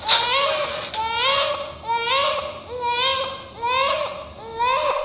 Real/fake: real